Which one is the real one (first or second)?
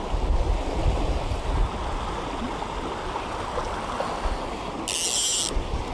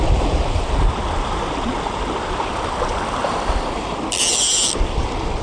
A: first